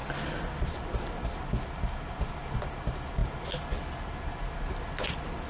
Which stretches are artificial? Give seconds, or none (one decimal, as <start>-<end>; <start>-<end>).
none